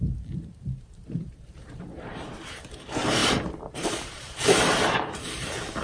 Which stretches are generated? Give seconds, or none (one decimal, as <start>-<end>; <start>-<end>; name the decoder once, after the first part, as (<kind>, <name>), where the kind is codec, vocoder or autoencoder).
0.0-5.8 (vocoder, BigVGAN v2)